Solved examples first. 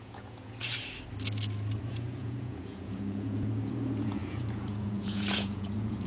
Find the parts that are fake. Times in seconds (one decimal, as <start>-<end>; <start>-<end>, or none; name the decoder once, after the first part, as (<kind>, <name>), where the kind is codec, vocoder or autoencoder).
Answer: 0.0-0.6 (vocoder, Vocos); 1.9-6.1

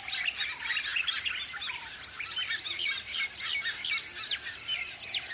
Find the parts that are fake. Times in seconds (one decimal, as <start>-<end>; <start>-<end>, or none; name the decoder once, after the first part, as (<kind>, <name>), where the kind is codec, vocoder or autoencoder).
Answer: none

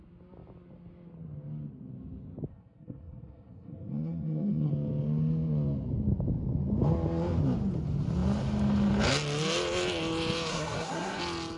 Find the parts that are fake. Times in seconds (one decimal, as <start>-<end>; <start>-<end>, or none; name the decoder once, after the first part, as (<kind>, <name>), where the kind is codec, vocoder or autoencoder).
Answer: 2.5-4.7 (codec, SNAC); 10.5-11.2